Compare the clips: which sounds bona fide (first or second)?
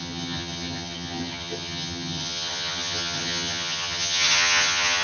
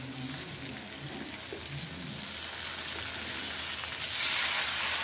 second